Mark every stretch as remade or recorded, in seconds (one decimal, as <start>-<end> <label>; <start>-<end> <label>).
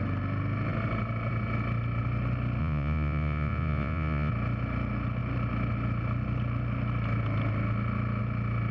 0.0-2.6 recorded; 2.6-4.3 remade; 4.3-8.7 recorded